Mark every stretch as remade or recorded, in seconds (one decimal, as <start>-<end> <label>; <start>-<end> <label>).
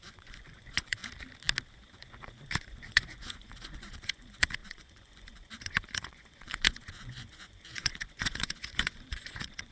0.0-1.0 remade; 1.0-1.7 recorded; 1.7-9.7 remade